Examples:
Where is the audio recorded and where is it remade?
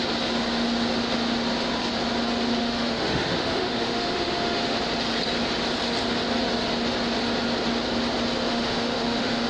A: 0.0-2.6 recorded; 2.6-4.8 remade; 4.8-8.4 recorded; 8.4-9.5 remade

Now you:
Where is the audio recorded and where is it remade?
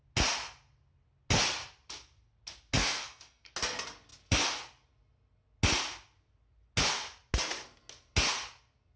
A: 0.0-2.8 recorded; 2.8-3.5 remade; 3.5-9.0 recorded